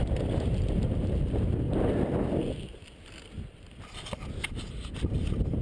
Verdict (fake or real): real